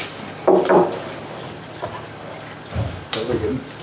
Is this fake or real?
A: fake